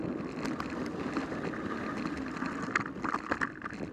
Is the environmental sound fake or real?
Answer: real